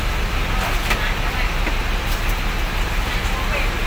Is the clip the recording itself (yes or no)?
yes